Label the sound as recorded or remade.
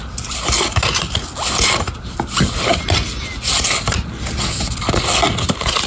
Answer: recorded